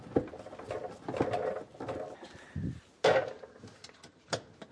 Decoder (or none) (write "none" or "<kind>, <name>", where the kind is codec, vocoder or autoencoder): none